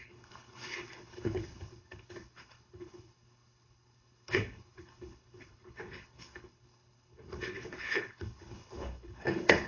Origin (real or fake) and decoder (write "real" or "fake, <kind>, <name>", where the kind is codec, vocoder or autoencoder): fake, codec, HILCodec